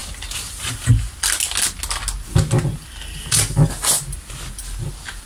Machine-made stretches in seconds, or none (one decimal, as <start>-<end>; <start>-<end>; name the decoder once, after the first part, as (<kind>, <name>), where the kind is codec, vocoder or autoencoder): 0.5-0.9 (vocoder, BigVGAN v2); 4.1-5.3